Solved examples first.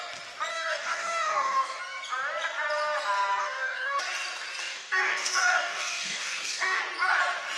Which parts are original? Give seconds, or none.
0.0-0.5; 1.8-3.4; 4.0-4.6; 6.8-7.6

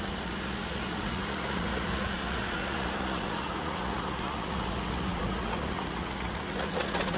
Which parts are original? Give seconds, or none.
none